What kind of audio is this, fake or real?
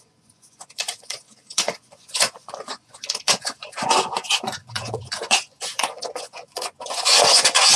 fake